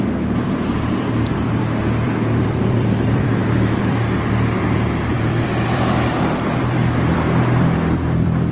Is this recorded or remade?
remade